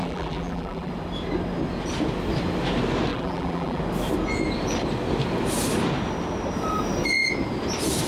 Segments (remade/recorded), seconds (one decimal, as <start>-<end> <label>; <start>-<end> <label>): 0.0-0.9 remade; 0.9-3.1 recorded; 3.1-3.8 remade; 3.8-8.1 recorded